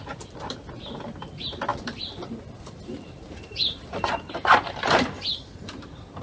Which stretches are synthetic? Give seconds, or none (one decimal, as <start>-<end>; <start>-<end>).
1.7-4.7